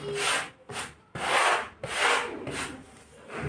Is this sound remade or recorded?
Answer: recorded